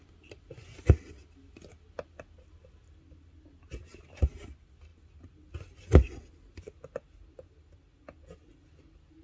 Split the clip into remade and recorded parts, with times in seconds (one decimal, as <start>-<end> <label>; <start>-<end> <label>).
0.0-9.2 recorded